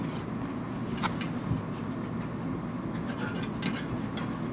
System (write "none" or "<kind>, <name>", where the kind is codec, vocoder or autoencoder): none